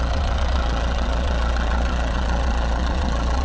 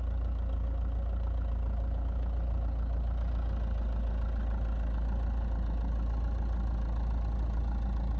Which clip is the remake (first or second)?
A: first